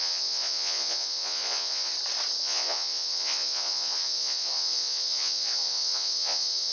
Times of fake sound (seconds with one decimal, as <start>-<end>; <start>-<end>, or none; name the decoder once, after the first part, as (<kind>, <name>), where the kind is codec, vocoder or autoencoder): 0.0-1.9 (vocoder, Vocos); 2.4-6.7